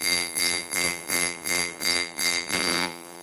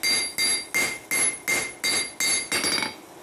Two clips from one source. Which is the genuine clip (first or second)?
second